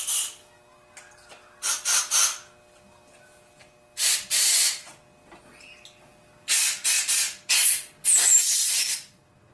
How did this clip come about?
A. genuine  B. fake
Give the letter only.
A